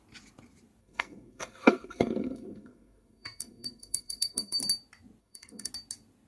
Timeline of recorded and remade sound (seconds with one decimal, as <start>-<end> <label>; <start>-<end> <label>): 0.0-0.8 recorded; 0.8-4.6 remade; 4.6-5.2 recorded; 5.2-5.7 remade; 5.7-6.3 recorded